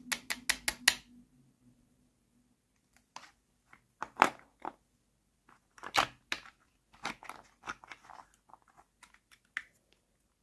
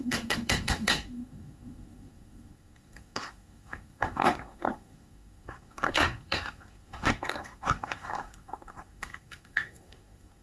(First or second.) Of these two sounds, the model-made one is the second